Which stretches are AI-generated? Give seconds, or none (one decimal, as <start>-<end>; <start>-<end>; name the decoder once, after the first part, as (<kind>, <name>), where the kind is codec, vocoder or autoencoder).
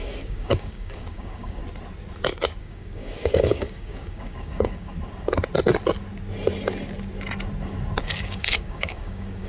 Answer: 0.0-1.6 (codec, DAC); 2.6-4.9; 8.0-9.5